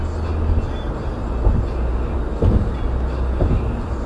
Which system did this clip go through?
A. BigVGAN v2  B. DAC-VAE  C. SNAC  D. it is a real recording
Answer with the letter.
D